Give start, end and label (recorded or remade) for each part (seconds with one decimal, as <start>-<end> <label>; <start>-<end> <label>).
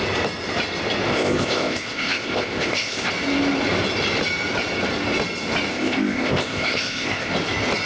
0.0-1.1 recorded; 1.1-3.1 remade; 3.1-5.7 recorded; 5.7-7.3 remade; 7.3-7.8 recorded